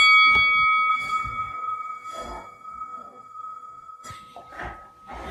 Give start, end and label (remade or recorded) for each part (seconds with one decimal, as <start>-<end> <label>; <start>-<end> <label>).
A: 0.0-0.9 recorded; 0.9-4.1 remade; 4.1-5.3 recorded